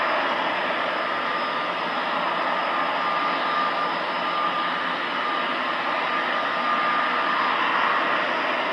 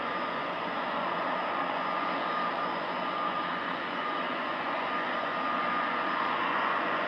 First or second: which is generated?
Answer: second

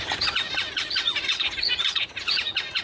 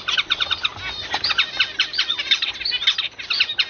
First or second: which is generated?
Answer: first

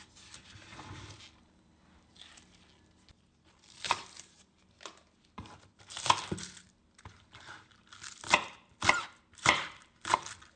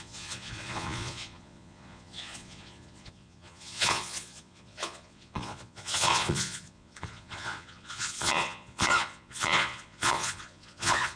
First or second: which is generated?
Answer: second